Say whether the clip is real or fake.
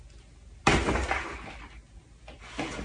real